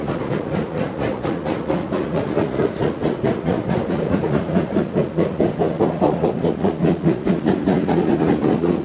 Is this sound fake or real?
fake